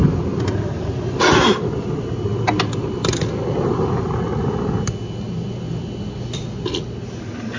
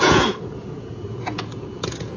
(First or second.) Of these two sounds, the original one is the first